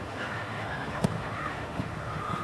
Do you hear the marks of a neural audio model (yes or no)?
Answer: yes